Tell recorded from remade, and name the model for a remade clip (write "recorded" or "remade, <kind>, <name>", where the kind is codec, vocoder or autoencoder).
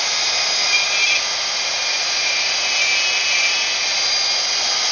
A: recorded